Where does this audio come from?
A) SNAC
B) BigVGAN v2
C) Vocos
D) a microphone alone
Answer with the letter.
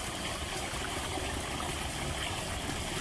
D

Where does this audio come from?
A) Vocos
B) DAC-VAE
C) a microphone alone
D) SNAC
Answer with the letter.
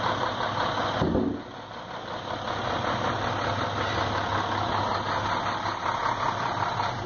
C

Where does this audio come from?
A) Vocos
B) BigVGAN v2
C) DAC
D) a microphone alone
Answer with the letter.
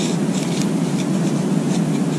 D